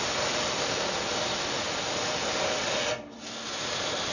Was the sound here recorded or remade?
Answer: recorded